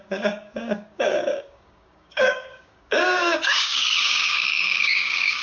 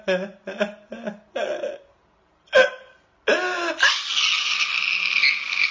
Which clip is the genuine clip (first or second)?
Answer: second